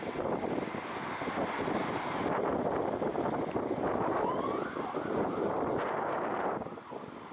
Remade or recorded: recorded